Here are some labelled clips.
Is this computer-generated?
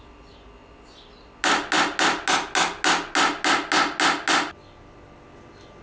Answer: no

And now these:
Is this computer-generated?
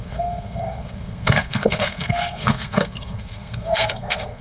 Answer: yes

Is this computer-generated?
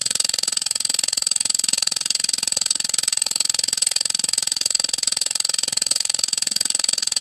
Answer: yes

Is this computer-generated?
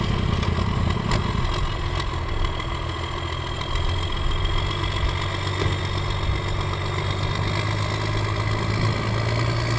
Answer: no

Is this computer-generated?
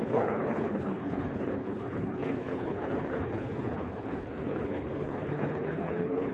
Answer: yes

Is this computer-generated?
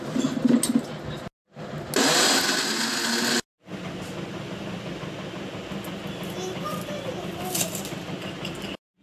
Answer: no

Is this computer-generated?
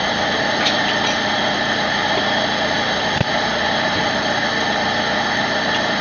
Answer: no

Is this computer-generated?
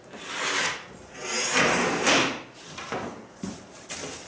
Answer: no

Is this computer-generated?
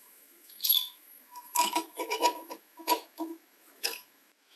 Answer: yes